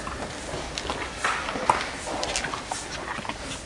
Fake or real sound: real